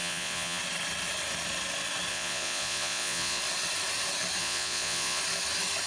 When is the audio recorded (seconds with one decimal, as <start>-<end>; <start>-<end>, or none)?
0.6-2.1; 3.4-4.4; 5.2-5.9

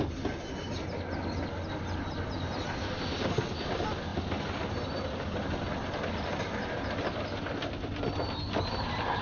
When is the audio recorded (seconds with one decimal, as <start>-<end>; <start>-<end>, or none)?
0.0-9.2